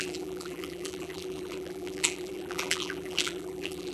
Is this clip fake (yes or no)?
yes